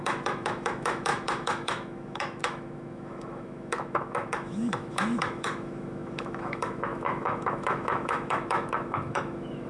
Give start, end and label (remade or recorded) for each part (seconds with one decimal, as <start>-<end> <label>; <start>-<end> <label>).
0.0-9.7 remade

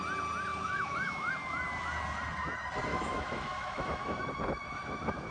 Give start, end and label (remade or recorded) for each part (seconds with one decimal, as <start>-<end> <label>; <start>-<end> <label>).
0.0-0.5 recorded; 0.5-1.3 remade; 1.3-2.9 recorded; 2.9-5.3 remade

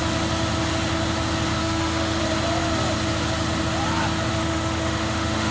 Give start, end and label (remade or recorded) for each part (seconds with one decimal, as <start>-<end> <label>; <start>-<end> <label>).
0.0-1.6 recorded; 1.6-2.2 remade; 2.2-4.3 recorded; 4.3-5.5 remade